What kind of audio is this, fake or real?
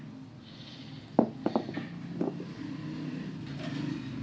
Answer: real